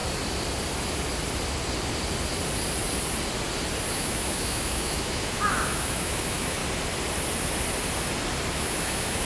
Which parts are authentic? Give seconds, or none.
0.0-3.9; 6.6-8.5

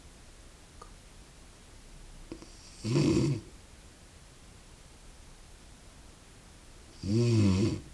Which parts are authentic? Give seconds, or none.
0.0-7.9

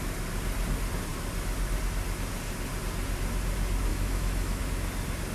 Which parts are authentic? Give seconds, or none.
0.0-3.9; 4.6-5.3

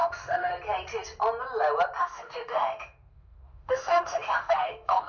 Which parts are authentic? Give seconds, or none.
0.5-2.0

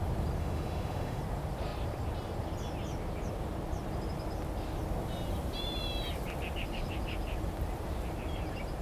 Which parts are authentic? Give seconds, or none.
0.0-0.4; 1.2-8.8